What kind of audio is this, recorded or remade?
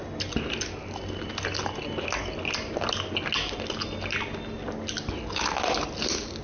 recorded